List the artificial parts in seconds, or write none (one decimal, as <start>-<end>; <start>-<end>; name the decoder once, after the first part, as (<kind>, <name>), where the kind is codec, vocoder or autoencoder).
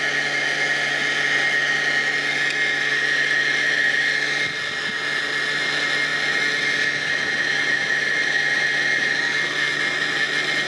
none